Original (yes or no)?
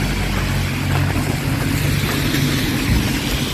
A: yes